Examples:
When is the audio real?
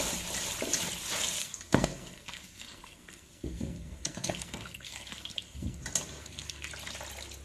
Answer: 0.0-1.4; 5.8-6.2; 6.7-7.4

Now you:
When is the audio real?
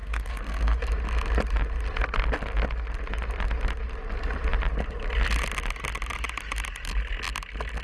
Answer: 0.8-7.8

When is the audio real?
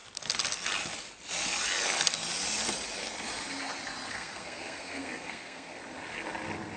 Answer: 0.0-4.1; 5.8-6.8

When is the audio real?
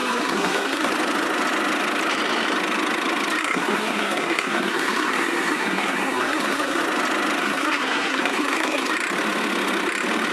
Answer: 0.9-3.4; 6.8-7.4; 8.9-10.3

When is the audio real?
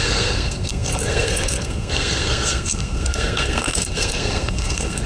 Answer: none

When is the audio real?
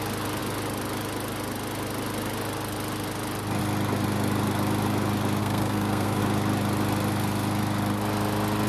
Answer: 0.0-5.4; 6.2-8.7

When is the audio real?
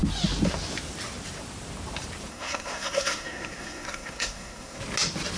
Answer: 0.0-2.3; 4.8-5.4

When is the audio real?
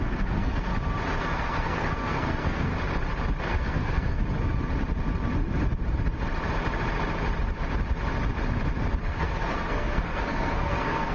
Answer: 0.7-1.2; 2.7-3.4; 4.2-9.0